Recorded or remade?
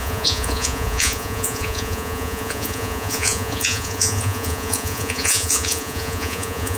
remade